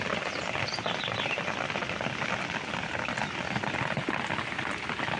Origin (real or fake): real